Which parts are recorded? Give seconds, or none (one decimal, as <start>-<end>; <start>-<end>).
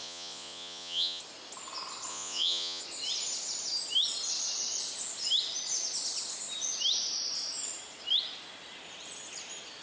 1.2-2.1; 2.8-9.8